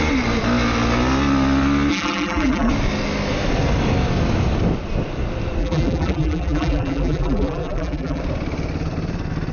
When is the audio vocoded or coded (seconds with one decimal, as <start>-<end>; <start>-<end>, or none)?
1.9-2.7; 5.6-8.2

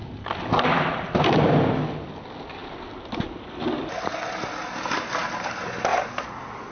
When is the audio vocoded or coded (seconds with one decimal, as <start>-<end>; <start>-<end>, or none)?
none

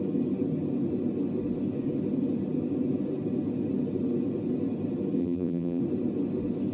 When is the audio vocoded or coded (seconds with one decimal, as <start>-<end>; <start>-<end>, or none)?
5.2-5.8